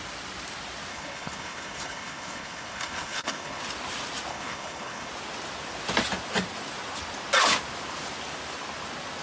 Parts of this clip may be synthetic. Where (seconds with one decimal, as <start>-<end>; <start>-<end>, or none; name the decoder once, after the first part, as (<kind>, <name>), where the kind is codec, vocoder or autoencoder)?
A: 0.9-3.6 (codec, HILCodec); 4.3-5.1